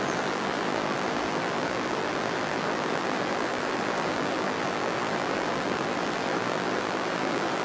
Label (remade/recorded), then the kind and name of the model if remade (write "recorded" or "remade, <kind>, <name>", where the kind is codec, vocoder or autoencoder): remade, vocoder, BigVGAN v2